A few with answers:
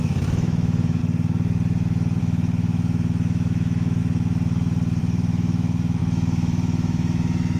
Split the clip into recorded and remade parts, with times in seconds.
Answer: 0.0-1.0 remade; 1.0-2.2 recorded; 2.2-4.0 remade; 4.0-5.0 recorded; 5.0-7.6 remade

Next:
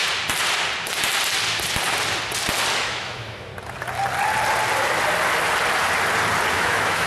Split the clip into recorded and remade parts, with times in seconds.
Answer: 0.0-2.8 recorded; 2.8-3.5 remade; 3.5-6.5 recorded; 6.5-7.1 remade

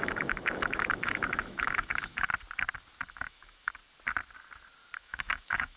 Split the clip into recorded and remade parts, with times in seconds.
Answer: 0.0-2.3 remade; 2.3-3.1 recorded; 3.1-3.8 remade; 3.8-5.0 recorded; 5.0-5.8 remade

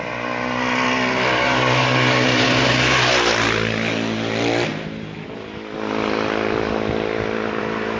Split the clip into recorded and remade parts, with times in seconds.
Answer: 0.0-8.0 recorded

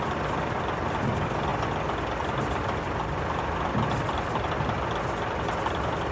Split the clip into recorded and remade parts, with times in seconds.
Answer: 0.0-6.1 recorded

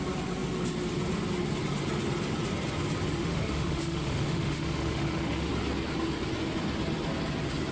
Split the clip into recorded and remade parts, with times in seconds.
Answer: 0.0-3.2 recorded; 3.2-5.5 remade; 5.5-7.7 recorded